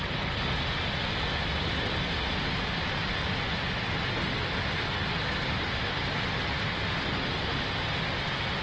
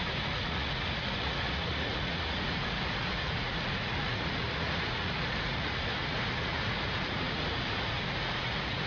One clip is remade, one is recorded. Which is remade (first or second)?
second